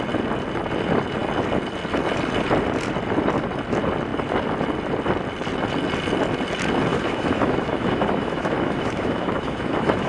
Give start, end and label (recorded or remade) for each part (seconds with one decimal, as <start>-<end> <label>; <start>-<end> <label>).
0.0-6.9 recorded; 6.9-10.1 remade